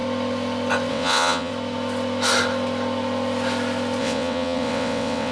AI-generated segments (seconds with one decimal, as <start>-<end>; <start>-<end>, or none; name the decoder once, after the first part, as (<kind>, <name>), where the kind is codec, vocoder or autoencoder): 0.9-1.5 (vocoder, WaveNeXt); 4.0-5.3